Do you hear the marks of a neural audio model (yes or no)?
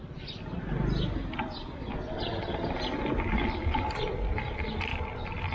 no